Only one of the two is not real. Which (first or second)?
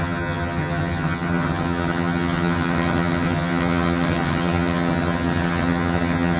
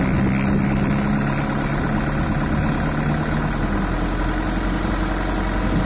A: first